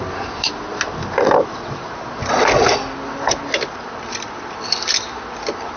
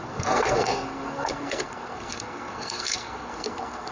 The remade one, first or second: second